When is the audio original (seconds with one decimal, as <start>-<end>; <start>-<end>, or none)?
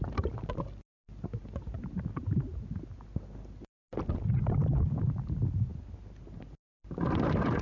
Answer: 0.0-7.6